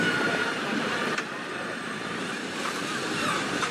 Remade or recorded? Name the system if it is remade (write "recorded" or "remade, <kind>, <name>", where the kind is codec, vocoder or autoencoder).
remade, vocoder, BigVGAN v2